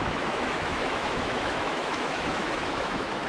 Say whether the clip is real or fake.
fake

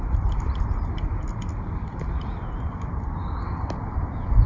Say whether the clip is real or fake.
real